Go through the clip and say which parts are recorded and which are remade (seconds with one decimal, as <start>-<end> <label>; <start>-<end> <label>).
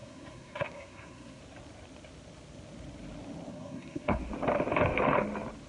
0.0-1.4 remade; 1.4-3.5 recorded; 3.5-4.2 remade; 4.2-5.7 recorded